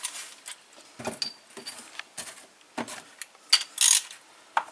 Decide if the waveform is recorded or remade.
recorded